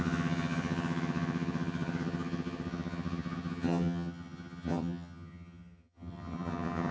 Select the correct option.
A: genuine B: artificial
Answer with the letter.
B